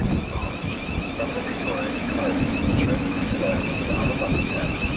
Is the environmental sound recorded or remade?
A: remade